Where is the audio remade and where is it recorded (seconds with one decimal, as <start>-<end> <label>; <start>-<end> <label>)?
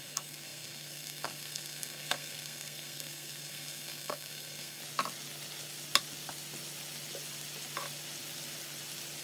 0.0-4.8 remade; 4.8-9.2 recorded